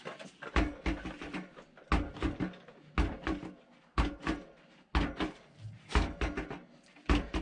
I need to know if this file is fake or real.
real